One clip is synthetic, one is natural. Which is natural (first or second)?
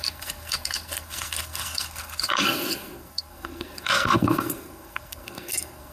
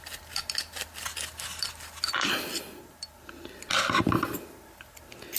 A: second